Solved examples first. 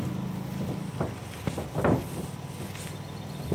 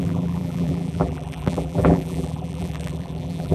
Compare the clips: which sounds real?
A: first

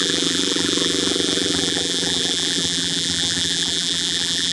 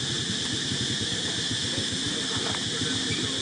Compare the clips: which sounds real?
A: second